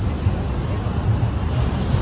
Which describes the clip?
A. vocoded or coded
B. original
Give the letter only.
B